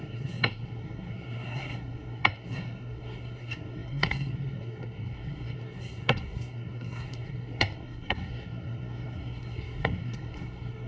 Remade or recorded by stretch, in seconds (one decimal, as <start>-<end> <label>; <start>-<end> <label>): 0.0-10.9 remade